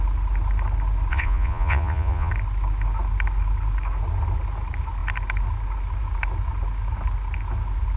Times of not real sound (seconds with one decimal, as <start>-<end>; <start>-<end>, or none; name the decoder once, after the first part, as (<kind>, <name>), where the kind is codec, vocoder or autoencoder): 1.1-2.3 (vocoder, Vocos)